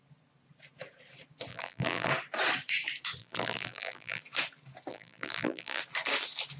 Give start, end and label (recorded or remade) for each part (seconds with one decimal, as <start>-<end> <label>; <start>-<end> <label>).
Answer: 0.0-1.5 recorded; 1.5-2.1 remade; 2.1-3.2 recorded; 3.2-4.2 remade; 4.2-4.9 recorded; 4.9-5.8 remade; 5.8-6.6 recorded